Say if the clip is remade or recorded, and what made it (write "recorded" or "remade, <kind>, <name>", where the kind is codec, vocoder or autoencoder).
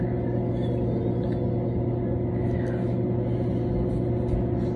recorded